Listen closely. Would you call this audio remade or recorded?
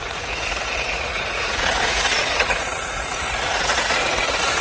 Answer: remade